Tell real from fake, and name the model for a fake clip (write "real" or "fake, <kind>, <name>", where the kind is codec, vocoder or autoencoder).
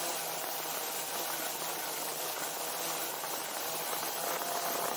real